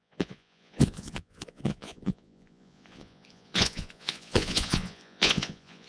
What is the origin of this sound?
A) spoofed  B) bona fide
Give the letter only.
A